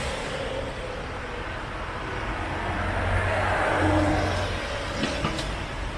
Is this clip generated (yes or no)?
no